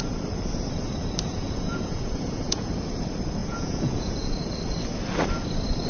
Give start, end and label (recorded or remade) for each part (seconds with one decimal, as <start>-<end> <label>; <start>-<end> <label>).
0.0-1.3 recorded; 1.3-2.7 remade; 2.7-3.4 recorded; 3.4-4.3 remade; 4.3-5.9 recorded